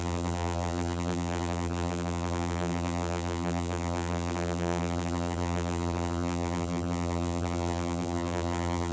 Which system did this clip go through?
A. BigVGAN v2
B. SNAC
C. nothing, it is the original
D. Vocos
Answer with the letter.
A